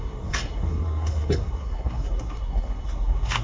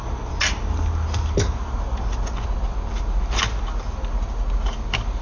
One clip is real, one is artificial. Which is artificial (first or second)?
first